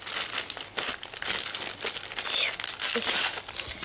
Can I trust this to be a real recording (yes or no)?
yes